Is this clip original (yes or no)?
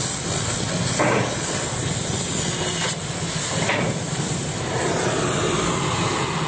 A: yes